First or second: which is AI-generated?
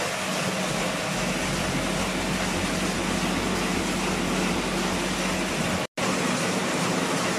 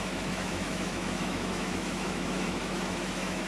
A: second